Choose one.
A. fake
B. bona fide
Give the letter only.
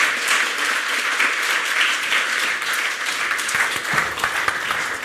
B